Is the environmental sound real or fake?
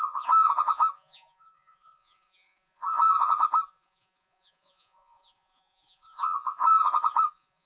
fake